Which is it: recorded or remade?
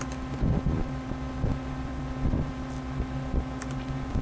remade